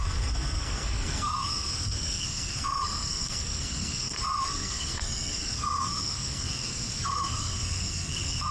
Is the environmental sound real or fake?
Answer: fake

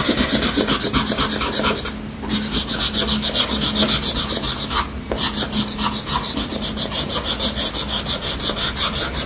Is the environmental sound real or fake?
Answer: real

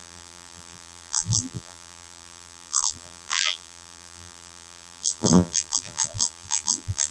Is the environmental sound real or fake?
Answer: fake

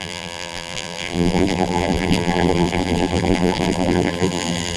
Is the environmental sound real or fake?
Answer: fake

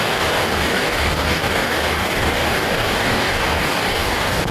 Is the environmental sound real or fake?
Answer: fake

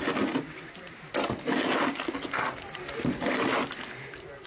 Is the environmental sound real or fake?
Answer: real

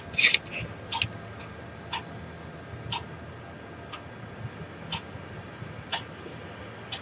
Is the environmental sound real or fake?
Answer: real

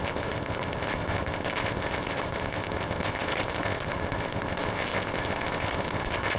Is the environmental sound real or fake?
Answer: fake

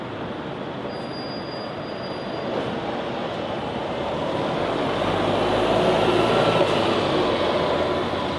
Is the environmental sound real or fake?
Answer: real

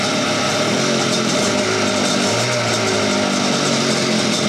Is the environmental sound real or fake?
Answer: real